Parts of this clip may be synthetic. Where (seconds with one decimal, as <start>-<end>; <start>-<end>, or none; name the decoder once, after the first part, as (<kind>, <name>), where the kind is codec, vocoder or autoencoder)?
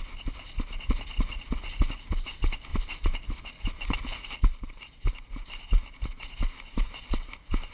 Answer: 2.7-5.1 (vocoder, BigVGAN v2)